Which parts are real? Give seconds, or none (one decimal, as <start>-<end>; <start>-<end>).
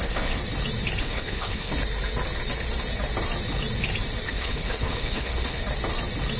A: 0.4-1.0; 1.7-4.3; 5.6-6.4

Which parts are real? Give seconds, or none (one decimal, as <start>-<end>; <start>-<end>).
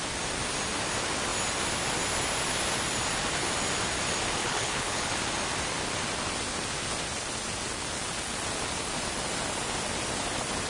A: 0.0-4.4; 5.1-10.7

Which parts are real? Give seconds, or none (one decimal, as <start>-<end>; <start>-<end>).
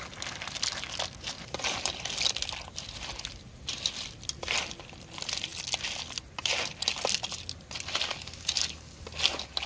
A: 0.0-9.7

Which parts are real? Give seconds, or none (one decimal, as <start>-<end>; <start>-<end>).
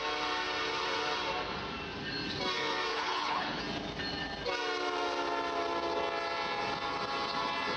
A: 0.0-2.9; 3.6-7.8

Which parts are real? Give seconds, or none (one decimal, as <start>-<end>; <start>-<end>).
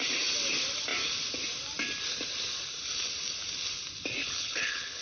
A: 0.0-4.2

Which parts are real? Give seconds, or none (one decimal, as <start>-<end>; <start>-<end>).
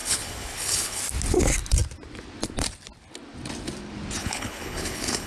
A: 1.0-4.2